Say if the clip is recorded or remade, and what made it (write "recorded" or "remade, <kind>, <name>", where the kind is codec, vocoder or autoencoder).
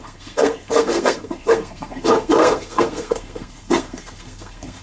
remade, codec, SNAC